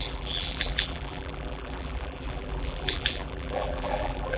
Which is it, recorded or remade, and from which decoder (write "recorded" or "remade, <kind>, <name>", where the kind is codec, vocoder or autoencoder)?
remade, vocoder, BigVGAN v2